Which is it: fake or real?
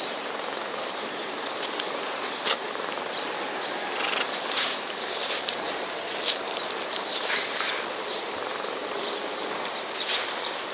fake